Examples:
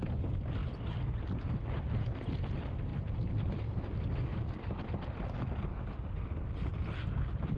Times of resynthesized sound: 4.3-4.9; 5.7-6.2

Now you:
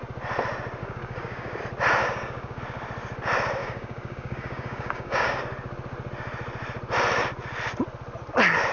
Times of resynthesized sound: 0.8-1.6; 2.0-2.6; 3.6-5.4

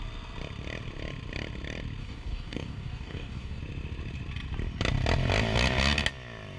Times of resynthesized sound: 2.0-3.6

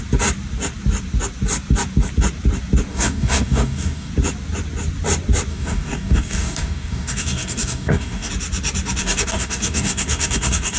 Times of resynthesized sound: 2.9-4.1; 5.5-8.3; 9.0-10.8

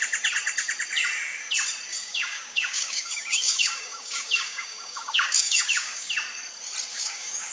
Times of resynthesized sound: 1.9-6.1; 6.9-7.5

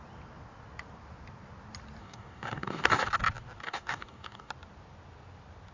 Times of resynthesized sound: 2.0-3.1; 3.6-4.5

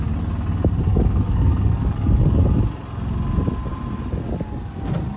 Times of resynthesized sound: 0.9-2.6

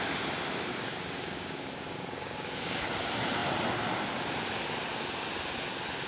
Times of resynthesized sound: 0.7-2.8